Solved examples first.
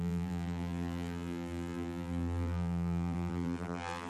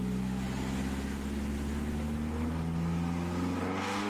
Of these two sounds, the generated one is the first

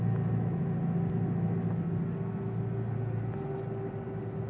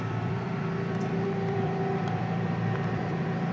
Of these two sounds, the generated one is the second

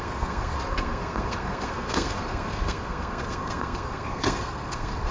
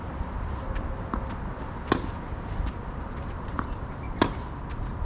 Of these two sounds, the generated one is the first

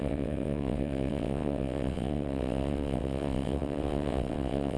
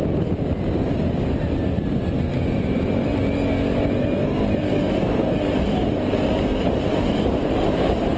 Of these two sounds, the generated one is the first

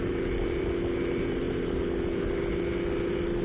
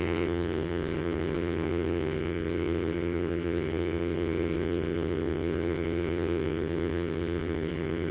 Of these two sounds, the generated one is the second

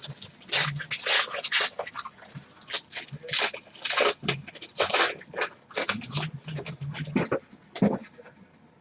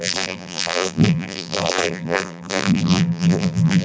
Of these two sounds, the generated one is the second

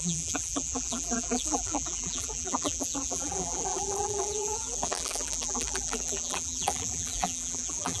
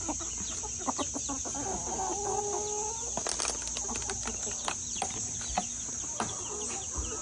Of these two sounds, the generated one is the first